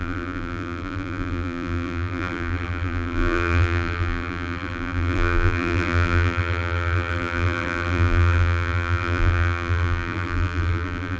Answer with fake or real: fake